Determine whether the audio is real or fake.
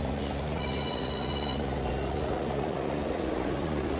fake